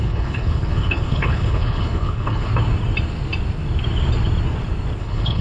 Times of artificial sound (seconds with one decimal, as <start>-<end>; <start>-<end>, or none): 0.0-2.5; 5.0-5.4